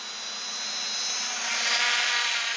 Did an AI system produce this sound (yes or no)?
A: no